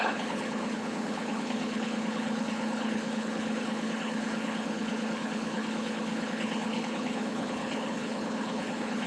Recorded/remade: remade